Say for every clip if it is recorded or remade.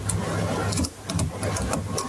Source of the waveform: recorded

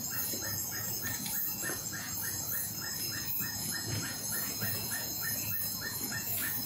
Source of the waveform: remade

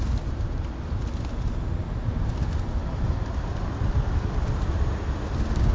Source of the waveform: recorded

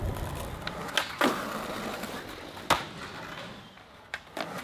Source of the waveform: recorded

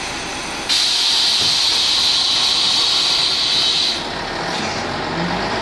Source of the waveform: recorded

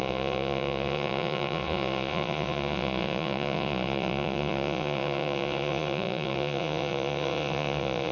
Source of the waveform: remade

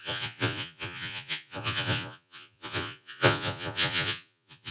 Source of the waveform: remade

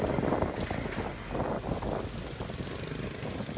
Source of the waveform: recorded